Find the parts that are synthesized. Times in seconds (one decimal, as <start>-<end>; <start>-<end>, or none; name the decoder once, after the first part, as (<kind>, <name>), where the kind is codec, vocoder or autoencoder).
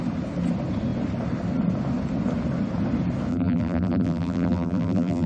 3.3-5.3 (vocoder, BigVGAN v2)